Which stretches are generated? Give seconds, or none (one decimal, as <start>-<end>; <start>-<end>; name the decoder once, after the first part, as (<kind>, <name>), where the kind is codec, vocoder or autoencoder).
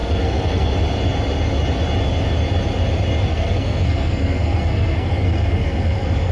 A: 0.0-0.7 (codec, SNAC); 3.3-6.3